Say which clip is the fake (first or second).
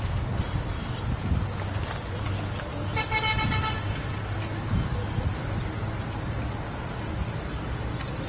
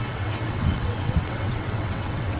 second